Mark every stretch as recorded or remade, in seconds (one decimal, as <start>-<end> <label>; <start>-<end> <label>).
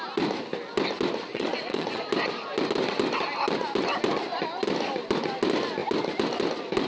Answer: 0.0-1.3 recorded; 1.3-2.0 remade; 2.0-6.9 recorded